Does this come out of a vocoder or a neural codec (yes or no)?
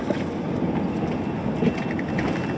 no